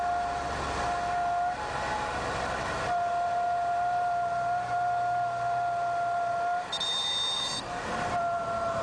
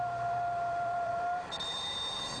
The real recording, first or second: first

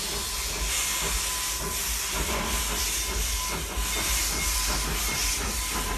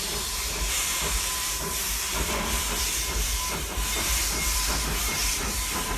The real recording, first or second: first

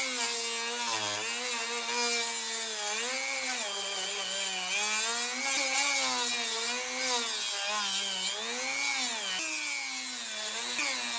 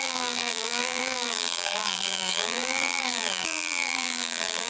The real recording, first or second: first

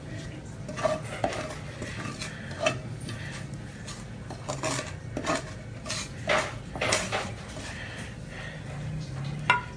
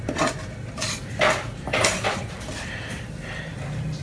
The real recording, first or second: first